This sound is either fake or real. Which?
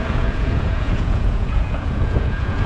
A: fake